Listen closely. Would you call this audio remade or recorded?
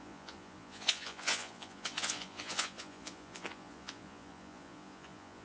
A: remade